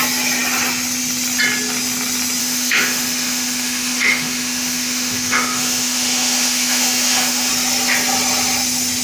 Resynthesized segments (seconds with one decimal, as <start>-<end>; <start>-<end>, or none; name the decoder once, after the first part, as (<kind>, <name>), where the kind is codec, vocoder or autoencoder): 2.4-7.5 (autoencoder, DAC-VAE)